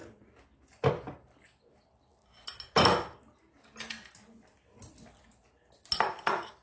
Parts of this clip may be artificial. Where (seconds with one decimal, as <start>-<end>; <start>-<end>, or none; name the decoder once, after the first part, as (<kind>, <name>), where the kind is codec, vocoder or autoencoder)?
0.9-2.1 (vocoder, BigVGAN v2); 6.1-6.6